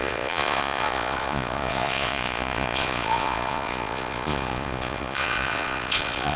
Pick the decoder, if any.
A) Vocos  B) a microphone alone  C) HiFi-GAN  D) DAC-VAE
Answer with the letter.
A